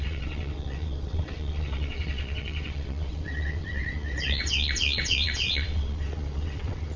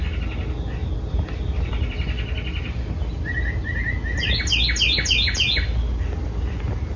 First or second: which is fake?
first